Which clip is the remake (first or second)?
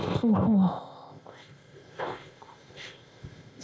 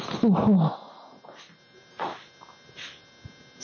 first